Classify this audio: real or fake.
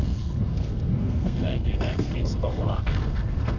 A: fake